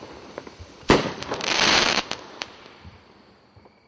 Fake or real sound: fake